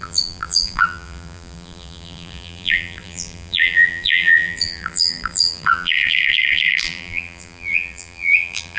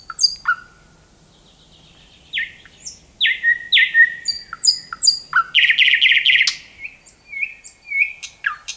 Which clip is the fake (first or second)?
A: first